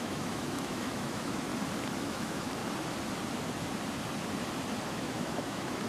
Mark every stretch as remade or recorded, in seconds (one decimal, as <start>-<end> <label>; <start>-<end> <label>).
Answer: 0.0-1.5 remade; 1.5-2.0 recorded; 2.0-2.6 remade; 2.6-4.9 recorded; 4.9-5.9 remade